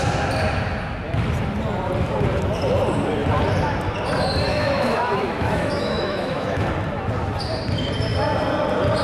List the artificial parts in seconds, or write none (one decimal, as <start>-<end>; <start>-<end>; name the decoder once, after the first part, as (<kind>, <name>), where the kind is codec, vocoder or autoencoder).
4.5-6.7 (autoencoder, DAC-VAE)